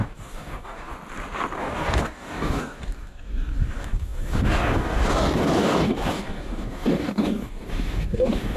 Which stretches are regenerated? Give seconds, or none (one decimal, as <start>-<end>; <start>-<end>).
0.0-0.9; 1.6-8.6